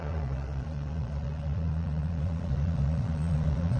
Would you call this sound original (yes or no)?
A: no